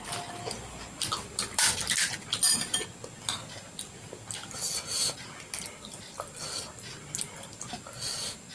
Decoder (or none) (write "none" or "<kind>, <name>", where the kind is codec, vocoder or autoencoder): none